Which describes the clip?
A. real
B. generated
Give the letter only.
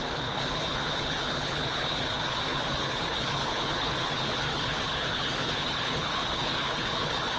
B